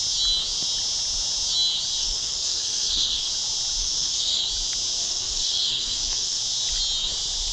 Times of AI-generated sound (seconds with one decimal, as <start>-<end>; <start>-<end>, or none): 2.0-3.3; 3.8-4.4; 5.0-6.4